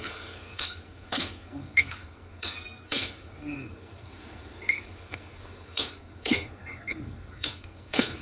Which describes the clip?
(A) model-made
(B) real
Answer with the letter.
A